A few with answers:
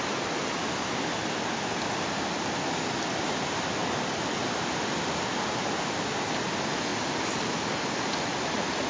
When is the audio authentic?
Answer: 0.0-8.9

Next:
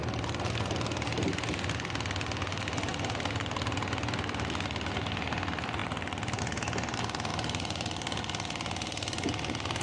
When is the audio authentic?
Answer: 0.0-7.3; 8.2-9.8

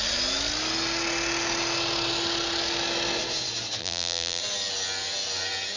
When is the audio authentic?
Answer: 0.0-3.8; 4.4-5.8

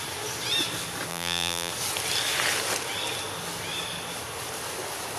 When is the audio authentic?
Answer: 0.0-1.1; 1.7-5.2

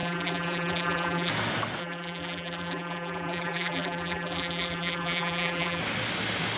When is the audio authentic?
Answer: 1.3-1.8; 5.8-6.6

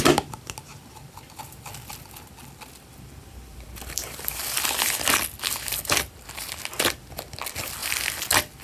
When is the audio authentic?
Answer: 0.0-2.4; 4.4-8.6